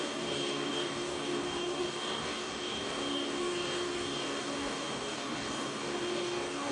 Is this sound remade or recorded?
remade